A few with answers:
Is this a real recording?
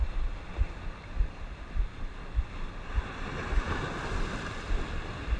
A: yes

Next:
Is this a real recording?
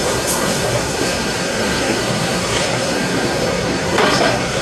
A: no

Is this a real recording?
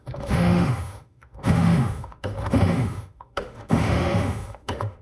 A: no